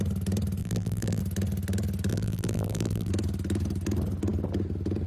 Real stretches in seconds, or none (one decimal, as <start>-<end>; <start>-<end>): 0.0-0.6; 1.2-2.1; 3.1-5.1